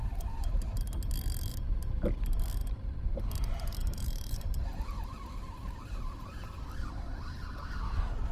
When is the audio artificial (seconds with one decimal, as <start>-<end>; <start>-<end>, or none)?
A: 1.5-2.1; 2.6-3.2; 3.8-7.2